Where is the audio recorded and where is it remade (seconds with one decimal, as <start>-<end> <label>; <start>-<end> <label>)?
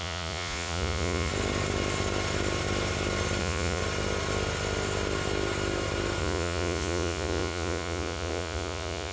0.0-1.3 remade; 1.3-3.4 recorded; 3.4-3.8 remade; 3.8-6.2 recorded; 6.2-9.1 remade